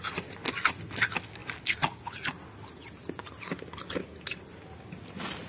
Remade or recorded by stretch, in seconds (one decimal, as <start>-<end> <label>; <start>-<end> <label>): 0.0-5.5 recorded